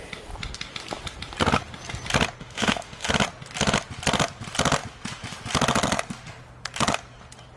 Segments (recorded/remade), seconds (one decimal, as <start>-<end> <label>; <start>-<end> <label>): 0.0-2.4 recorded; 2.4-3.1 remade; 3.1-7.6 recorded